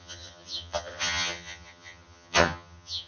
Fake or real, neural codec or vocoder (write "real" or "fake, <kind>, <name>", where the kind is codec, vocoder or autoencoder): fake, vocoder, HiFi-GAN